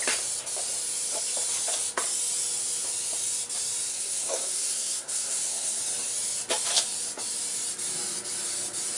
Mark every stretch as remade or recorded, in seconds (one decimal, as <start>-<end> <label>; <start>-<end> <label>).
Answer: 0.0-3.9 recorded; 3.9-5.8 remade; 5.8-9.0 recorded